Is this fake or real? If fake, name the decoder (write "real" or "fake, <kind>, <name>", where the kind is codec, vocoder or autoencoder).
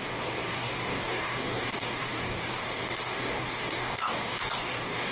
fake, codec, DAC